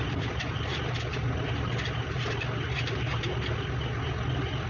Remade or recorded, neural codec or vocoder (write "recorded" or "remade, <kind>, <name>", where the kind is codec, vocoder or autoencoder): remade, vocoder, BigVGAN v2